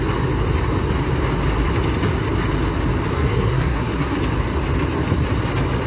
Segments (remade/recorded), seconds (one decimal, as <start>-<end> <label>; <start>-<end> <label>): 0.0-3.1 recorded; 3.1-4.2 remade; 4.2-5.9 recorded